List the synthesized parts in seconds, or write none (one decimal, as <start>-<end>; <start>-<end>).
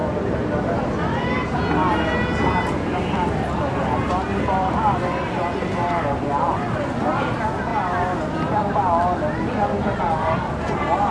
none